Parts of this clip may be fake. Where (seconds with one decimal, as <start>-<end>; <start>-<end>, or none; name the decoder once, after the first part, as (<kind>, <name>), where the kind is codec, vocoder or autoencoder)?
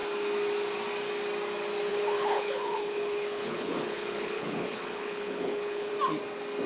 1.9-5.9 (codec, HILCodec)